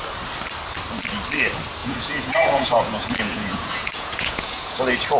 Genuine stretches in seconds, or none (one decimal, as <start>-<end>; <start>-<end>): 0.0-1.8; 4.8-5.2